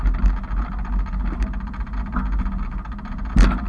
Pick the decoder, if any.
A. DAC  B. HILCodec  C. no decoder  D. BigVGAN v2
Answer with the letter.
C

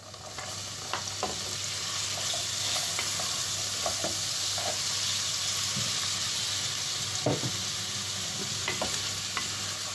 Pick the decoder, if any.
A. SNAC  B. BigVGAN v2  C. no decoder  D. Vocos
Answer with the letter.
C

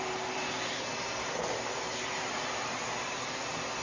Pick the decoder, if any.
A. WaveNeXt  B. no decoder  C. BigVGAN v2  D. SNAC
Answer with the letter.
C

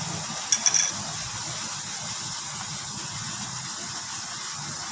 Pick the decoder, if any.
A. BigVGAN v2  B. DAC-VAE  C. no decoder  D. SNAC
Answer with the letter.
C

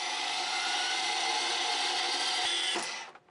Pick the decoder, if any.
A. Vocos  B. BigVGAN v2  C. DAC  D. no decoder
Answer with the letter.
D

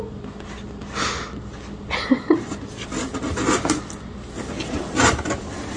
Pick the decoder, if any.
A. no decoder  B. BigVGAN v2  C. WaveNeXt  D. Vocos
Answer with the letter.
A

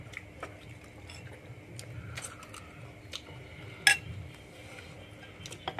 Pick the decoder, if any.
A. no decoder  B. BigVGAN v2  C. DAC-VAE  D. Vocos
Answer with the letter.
A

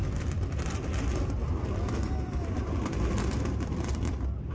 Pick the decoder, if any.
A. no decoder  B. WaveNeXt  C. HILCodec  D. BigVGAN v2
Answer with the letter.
D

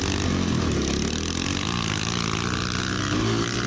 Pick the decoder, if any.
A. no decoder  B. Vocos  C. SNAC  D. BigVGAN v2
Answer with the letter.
A